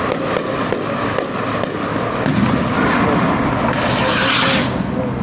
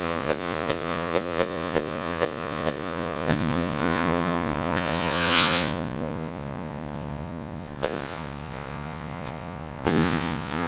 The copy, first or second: second